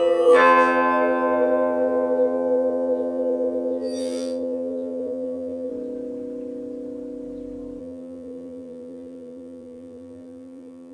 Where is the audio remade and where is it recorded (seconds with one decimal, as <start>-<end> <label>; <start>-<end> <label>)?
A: 0.0-5.7 remade; 5.7-7.8 recorded; 7.8-10.9 remade